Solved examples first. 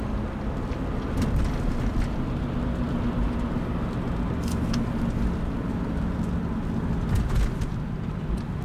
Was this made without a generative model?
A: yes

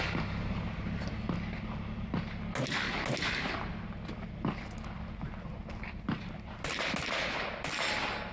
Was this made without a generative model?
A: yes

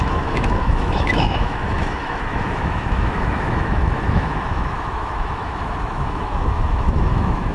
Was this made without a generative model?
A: no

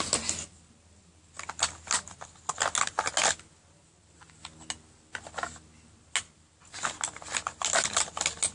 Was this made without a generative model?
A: yes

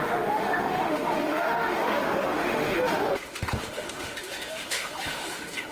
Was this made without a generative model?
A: no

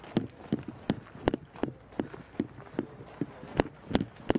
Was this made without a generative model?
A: yes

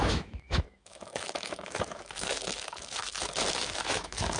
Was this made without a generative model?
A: no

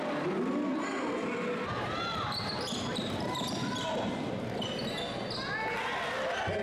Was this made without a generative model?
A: yes